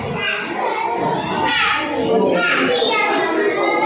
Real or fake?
real